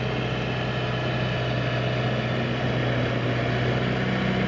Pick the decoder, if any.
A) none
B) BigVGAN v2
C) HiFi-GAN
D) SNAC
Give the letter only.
A